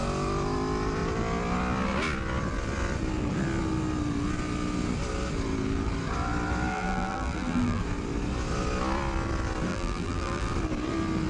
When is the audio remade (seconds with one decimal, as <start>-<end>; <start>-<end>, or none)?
6.7-7.8; 9.7-10.5